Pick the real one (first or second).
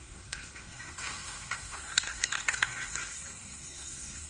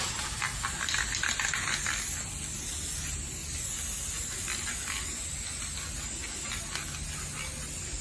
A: second